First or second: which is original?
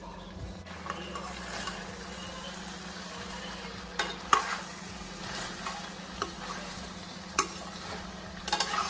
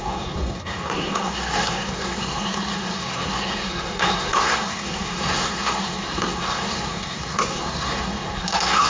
first